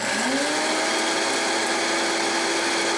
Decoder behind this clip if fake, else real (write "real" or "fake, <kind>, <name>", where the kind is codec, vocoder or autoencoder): real